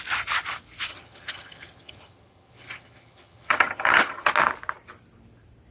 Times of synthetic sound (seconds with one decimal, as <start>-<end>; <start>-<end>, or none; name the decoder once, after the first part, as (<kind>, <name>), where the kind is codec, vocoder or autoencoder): 0.9-4.3 (vocoder, HiFi-GAN)